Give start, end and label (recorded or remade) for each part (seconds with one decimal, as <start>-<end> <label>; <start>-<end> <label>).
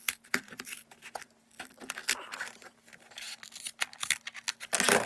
0.0-5.1 recorded